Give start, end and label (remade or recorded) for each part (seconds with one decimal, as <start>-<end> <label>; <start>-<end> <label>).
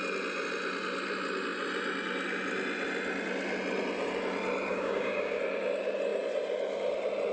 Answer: 0.0-4.7 recorded; 4.7-5.4 remade; 5.4-7.3 recorded